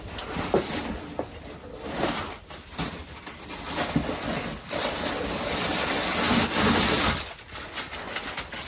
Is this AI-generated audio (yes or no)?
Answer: no